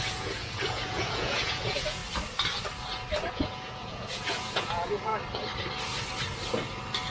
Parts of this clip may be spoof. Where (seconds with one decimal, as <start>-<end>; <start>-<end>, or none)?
0.0-2.0; 3.3-5.1